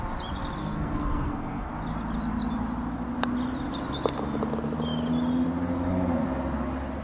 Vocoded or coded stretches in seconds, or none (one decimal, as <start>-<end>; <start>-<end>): 0.6-1.7